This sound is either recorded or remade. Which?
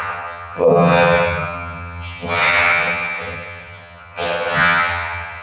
remade